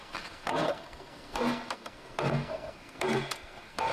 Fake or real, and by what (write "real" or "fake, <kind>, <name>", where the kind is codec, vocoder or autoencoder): fake, codec, SNAC